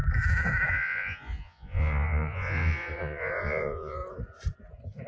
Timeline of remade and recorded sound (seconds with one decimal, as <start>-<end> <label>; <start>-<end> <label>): 0.0-0.7 recorded; 0.7-4.0 remade; 4.0-5.1 recorded